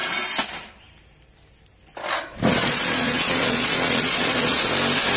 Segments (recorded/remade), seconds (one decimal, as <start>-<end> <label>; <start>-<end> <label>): 0.0-2.6 recorded; 2.6-4.7 remade; 4.7-5.2 recorded